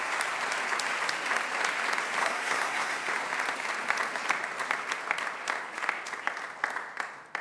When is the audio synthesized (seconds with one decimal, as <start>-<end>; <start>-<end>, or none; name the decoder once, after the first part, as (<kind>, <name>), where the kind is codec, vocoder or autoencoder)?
2.2-3.1 (codec, SNAC)